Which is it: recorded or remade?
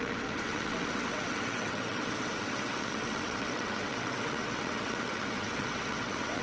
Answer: remade